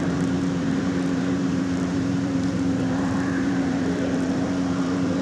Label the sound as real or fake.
fake